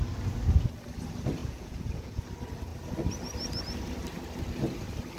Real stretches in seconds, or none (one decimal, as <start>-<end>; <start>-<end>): 0.0-1.4; 2.2-5.2